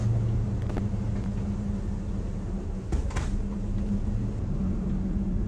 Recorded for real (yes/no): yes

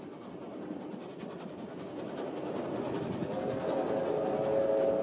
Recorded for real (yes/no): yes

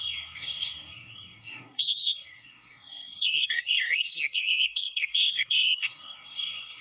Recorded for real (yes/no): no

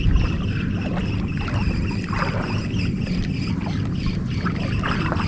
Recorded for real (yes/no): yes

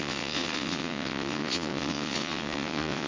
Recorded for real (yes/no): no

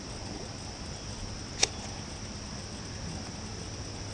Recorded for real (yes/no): yes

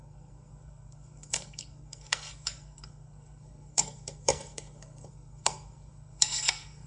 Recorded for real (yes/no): no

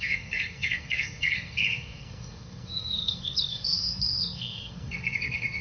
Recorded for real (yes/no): no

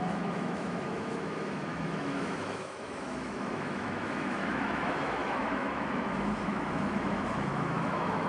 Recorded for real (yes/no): no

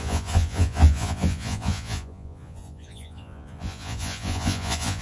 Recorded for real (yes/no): no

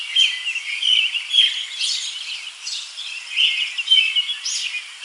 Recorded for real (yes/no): yes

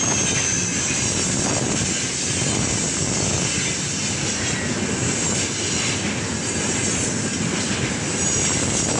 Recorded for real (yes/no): yes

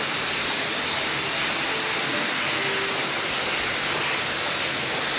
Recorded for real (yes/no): yes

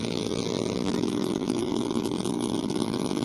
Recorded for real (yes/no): no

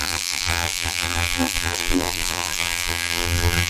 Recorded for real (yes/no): no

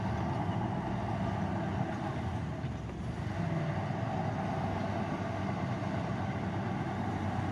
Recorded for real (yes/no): yes